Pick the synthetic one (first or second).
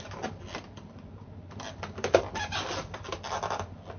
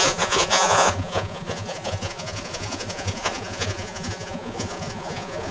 second